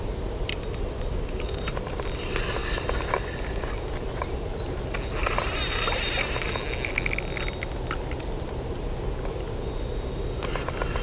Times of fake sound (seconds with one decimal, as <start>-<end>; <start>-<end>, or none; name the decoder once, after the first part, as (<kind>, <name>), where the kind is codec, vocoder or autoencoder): 1.1-1.6 (codec, DAC)